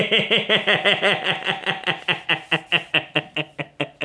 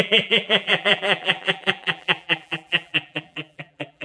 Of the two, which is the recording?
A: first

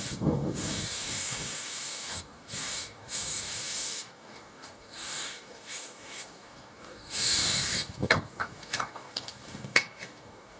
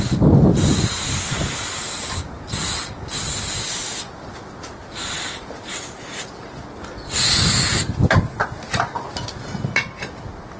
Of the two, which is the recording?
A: second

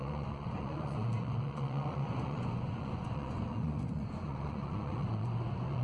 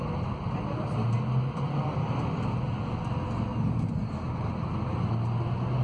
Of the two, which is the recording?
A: second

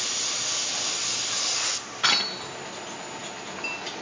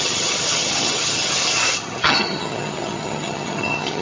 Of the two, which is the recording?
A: first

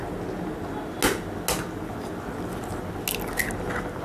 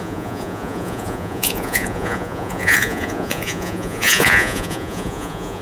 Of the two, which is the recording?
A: first